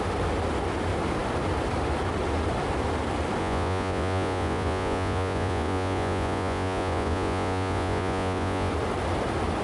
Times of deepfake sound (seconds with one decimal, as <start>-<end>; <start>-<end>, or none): 3.4-8.7